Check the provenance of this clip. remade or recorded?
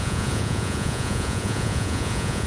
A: remade